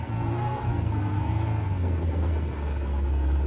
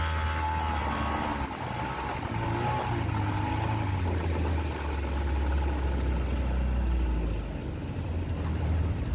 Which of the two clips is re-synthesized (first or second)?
first